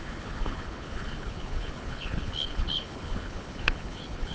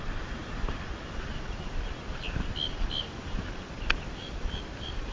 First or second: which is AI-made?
first